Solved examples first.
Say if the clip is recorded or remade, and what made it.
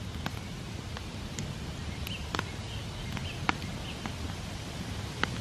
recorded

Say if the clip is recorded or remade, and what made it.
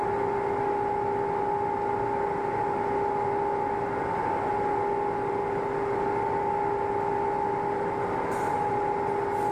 recorded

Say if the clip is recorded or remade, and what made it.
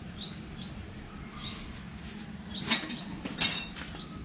recorded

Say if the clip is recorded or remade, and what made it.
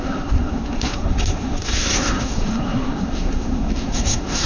remade, codec, SNAC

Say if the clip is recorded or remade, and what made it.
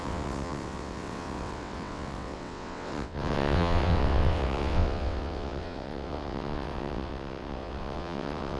remade, vocoder, WaveNeXt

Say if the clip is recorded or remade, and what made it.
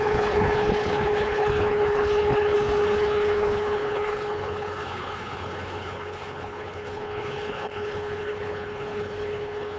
remade, codec, HILCodec